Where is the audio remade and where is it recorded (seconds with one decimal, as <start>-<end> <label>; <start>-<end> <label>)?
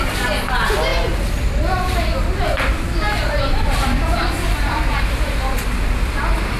0.0-6.6 recorded